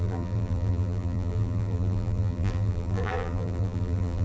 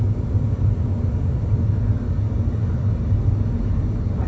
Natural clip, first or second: second